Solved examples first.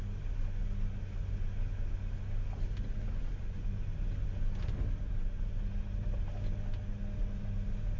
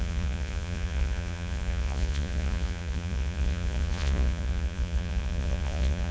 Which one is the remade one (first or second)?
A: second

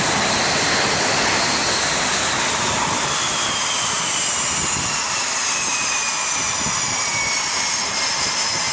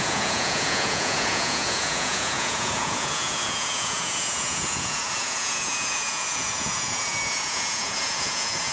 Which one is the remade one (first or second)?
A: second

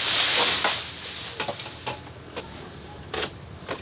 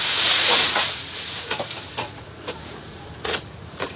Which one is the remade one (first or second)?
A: second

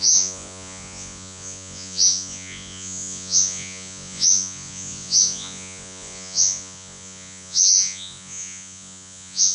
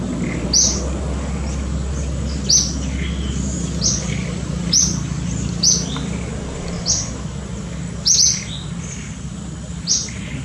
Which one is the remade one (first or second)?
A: first